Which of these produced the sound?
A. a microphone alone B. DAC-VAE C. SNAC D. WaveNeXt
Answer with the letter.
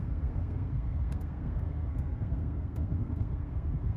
C